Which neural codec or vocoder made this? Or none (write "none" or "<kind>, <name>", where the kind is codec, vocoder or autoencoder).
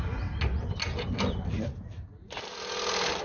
none